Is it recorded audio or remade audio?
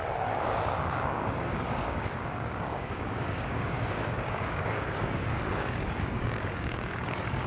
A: remade